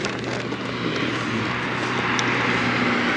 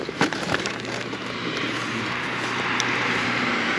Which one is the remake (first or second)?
second